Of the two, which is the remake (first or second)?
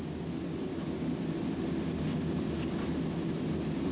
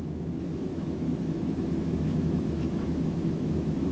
second